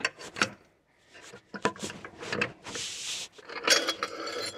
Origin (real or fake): real